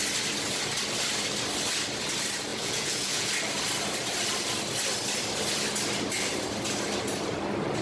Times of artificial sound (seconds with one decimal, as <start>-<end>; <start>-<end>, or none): 2.5-3.3

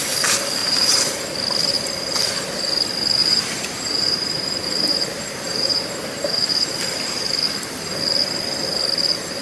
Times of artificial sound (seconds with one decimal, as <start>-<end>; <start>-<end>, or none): 0.6-1.1; 3.2-6.7

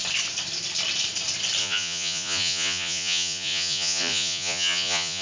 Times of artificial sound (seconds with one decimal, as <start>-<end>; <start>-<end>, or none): 1.6-5.2

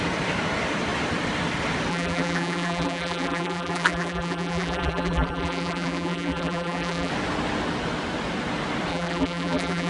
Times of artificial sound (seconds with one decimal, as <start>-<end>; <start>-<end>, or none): 1.9-7.1; 8.9-9.9

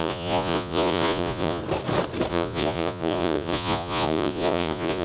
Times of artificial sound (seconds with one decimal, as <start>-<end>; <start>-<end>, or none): 0.0-1.6; 2.3-5.0

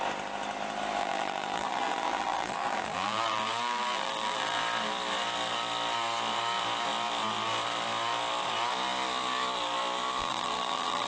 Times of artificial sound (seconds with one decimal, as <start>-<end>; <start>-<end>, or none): 1.0-4.6; 10.2-11.1

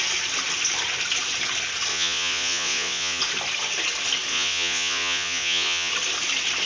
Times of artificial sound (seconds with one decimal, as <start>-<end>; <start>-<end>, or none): 1.9-3.2; 4.3-5.9